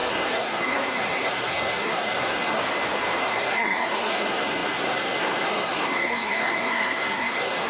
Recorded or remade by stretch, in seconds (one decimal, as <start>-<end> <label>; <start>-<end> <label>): 0.0-2.6 remade; 2.6-3.2 recorded; 3.2-7.7 remade